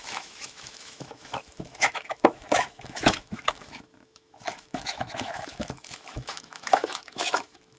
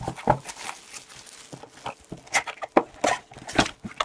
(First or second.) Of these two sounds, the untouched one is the second